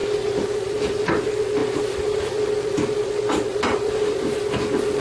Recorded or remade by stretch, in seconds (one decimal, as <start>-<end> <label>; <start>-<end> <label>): 0.0-0.8 remade; 0.8-1.6 recorded; 1.6-4.6 remade; 4.6-5.0 recorded